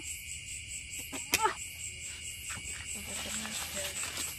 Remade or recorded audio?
recorded